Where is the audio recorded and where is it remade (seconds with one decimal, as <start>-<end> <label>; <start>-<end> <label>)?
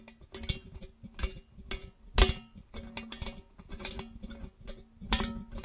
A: 0.0-5.6 recorded